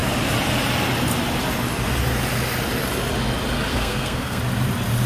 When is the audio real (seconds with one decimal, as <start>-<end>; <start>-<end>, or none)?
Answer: 0.0-3.7; 4.4-5.1